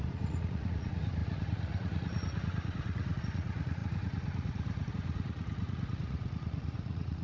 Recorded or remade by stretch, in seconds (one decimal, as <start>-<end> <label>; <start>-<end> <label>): 0.0-7.2 remade

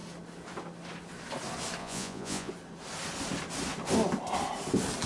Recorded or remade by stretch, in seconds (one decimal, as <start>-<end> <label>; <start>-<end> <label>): 0.0-1.8 recorded; 1.8-2.5 remade; 2.5-5.1 recorded